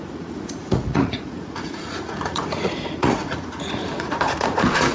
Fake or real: fake